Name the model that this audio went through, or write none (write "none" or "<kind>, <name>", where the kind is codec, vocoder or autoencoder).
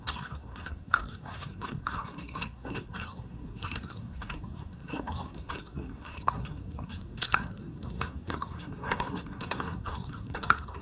codec, SNAC